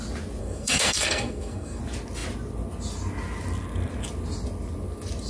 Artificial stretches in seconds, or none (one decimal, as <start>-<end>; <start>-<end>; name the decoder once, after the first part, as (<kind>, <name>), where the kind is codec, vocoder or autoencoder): 0.4-1.8 (codec, SNAC)